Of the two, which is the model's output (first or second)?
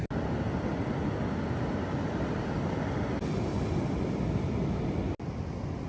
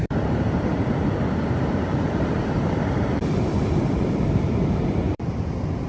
second